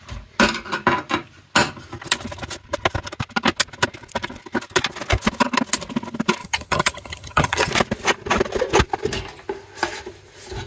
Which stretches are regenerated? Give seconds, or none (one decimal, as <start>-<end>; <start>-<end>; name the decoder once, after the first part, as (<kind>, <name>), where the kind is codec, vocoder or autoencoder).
6.4-7.7 (vocoder, HiFi-GAN)